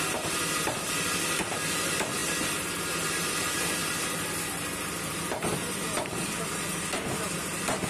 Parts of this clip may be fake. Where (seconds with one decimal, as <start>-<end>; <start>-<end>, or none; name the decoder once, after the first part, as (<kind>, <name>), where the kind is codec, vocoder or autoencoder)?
none